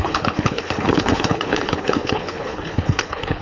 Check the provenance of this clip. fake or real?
fake